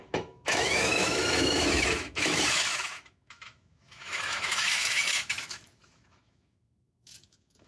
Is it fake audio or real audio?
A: fake